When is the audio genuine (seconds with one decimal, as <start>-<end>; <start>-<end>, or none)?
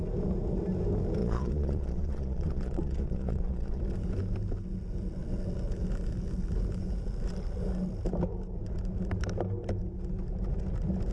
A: 0.0-1.2; 3.8-11.1